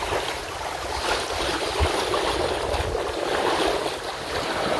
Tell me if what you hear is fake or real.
real